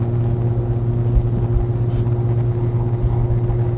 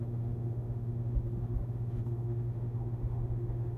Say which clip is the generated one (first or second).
second